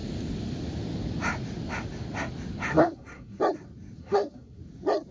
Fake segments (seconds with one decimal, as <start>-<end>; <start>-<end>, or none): 2.7-3.4; 4.0-4.6